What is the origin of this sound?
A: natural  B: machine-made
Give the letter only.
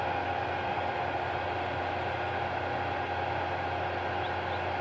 A